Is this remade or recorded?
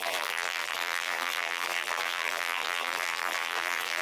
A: remade